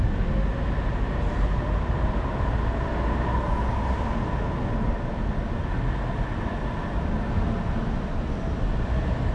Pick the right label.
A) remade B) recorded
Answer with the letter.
B